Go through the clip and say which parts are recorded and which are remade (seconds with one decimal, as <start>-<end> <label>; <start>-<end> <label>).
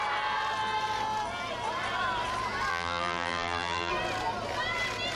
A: 0.0-2.7 recorded; 2.7-3.9 remade; 3.9-5.2 recorded